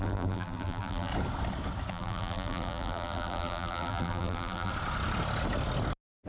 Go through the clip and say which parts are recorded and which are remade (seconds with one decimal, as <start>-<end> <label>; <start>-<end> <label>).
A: 0.0-1.1 remade; 1.1-1.9 recorded; 1.9-4.7 remade; 4.7-6.3 recorded